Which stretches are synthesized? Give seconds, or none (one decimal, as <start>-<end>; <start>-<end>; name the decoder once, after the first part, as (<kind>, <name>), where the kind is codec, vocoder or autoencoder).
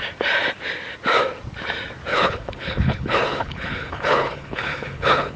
2.1-5.4 (codec, HILCodec)